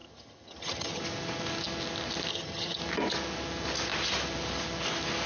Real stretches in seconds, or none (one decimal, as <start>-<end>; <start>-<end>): 1.0-2.3; 2.8-5.3